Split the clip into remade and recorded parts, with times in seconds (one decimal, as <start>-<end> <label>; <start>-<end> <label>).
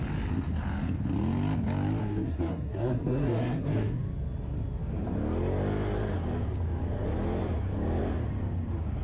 0.0-2.0 recorded; 2.0-4.0 remade; 4.0-9.0 recorded